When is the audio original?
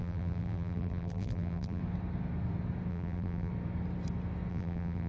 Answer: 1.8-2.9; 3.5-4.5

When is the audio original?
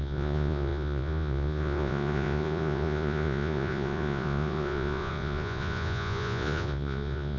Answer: none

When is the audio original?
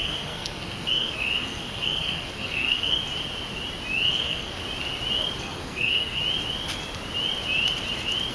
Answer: 3.0-4.1; 4.6-5.4; 6.2-8.3